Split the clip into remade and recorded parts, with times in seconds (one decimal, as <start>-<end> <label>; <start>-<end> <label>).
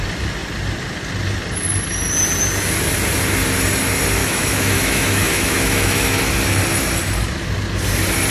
0.0-4.2 recorded; 4.2-6.2 remade; 6.2-8.3 recorded